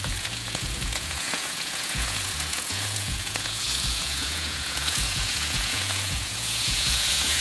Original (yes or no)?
no